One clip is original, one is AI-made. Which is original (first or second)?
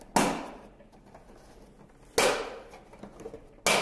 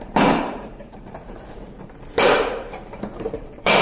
first